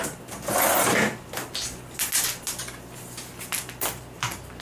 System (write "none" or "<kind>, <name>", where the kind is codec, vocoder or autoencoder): none